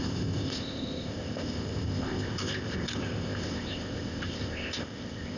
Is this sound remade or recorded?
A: remade